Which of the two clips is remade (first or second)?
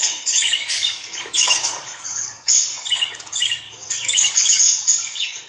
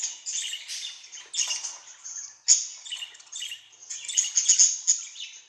first